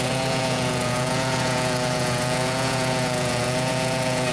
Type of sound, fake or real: fake